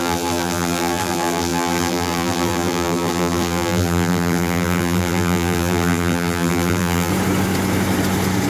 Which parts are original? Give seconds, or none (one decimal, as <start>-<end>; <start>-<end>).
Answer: 7.1-8.5

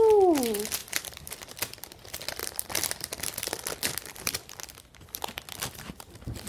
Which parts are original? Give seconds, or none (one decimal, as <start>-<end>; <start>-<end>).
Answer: 0.0-0.8; 1.5-2.4; 5.8-6.5

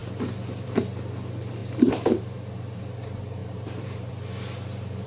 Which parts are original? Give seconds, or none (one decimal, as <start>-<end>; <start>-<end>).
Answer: 0.8-1.6; 2.8-3.4; 4.1-5.1

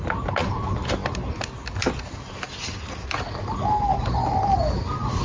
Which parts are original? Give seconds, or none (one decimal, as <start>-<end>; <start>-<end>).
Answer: 0.0-5.2